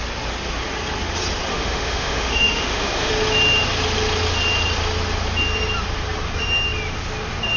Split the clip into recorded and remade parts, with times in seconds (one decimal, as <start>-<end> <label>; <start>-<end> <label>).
0.0-1.5 recorded; 1.5-3.1 remade; 3.1-7.6 recorded